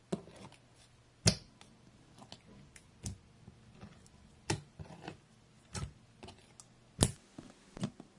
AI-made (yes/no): no